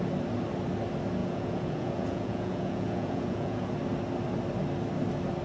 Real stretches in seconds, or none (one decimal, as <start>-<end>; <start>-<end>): 0.0-1.2; 3.7-5.4